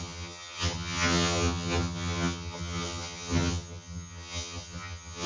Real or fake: fake